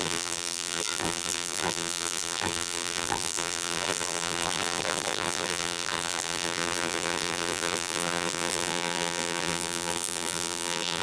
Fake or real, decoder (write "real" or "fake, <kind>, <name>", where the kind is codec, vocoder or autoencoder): fake, vocoder, BigVGAN v2